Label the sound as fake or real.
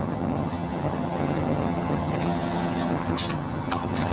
fake